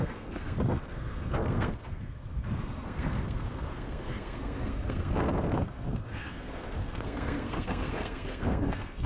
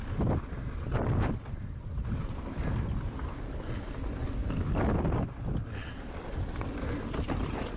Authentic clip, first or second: second